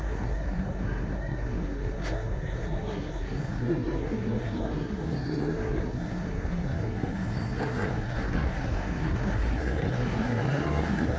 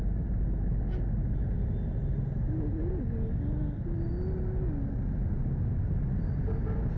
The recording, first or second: second